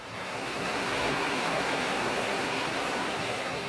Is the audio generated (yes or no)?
yes